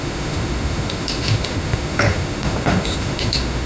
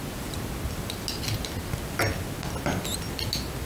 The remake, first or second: first